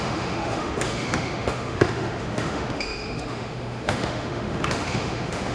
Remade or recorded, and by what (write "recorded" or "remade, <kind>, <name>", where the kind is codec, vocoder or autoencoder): remade, autoencoder, DAC-VAE